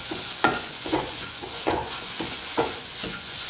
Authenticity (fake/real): fake